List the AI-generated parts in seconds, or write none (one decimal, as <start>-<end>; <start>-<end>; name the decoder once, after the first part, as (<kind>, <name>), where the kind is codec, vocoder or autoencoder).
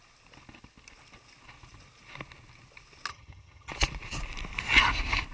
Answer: 3.1-3.7 (vocoder, HiFi-GAN)